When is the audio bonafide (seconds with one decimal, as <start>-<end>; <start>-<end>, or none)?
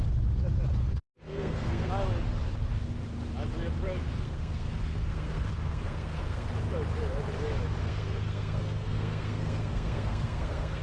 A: 0.0-0.8; 1.9-4.1; 6.5-7.8